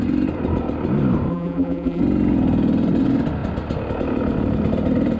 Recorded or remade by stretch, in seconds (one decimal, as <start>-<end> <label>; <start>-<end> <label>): 0.0-1.3 recorded; 1.3-2.0 remade; 2.0-5.2 recorded

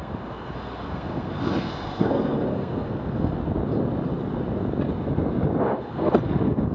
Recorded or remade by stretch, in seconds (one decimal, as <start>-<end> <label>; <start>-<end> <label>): 0.0-3.4 remade; 3.4-5.6 recorded; 5.6-6.7 remade

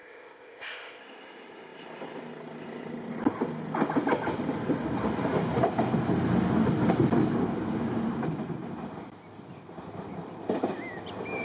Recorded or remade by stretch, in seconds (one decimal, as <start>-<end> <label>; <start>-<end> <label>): 0.0-1.0 remade; 1.0-11.4 recorded

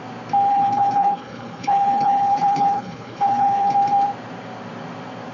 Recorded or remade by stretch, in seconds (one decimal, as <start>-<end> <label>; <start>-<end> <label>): 0.0-0.5 recorded; 0.5-3.7 remade; 3.7-5.3 recorded

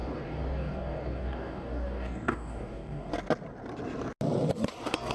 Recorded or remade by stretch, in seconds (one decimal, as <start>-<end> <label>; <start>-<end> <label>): 0.0-3.1 remade; 3.1-5.1 recorded

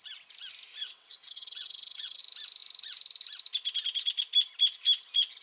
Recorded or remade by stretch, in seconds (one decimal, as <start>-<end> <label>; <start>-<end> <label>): 0.0-0.8 recorded; 0.8-2.2 remade; 2.2-5.4 recorded

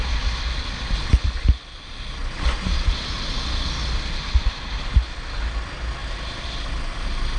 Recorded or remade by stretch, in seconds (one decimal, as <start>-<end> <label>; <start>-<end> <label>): 0.0-7.4 recorded